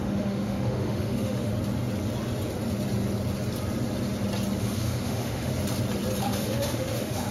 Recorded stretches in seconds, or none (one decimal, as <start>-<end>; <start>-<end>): 1.5-4.6; 5.5-6.2

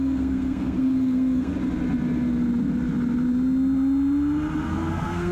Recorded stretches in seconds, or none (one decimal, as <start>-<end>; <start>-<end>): 1.5-4.7

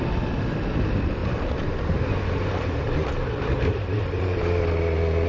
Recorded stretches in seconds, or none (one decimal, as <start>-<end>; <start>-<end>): 0.0-1.2; 4.4-5.3